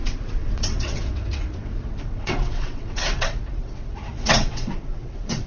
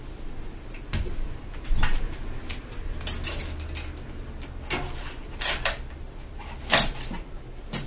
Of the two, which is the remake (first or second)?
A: first